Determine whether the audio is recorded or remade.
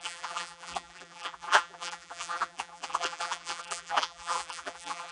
remade